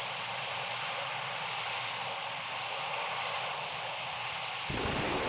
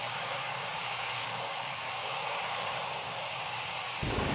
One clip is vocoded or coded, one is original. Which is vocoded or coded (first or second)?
second